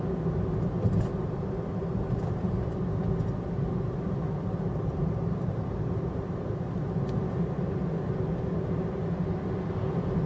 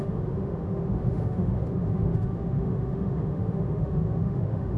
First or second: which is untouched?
first